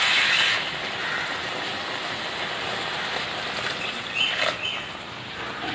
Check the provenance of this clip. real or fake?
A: real